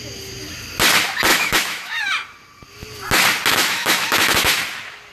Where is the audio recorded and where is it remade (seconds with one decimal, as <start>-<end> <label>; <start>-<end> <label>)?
0.0-1.3 recorded; 1.3-2.0 remade; 2.0-3.5 recorded; 3.5-4.6 remade; 4.6-5.1 recorded